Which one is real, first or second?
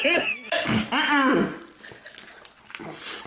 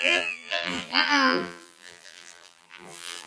first